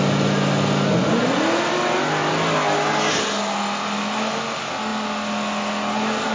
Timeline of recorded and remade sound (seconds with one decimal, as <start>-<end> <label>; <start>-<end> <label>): 0.0-6.3 recorded